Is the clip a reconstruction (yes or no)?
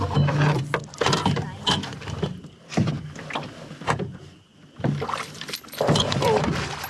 no